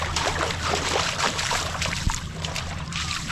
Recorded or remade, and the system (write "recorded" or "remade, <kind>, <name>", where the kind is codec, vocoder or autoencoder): remade, vocoder, BigVGAN v2